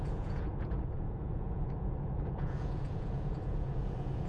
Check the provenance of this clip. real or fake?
fake